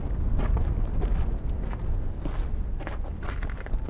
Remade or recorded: recorded